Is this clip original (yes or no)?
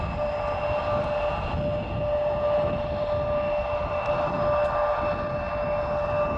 yes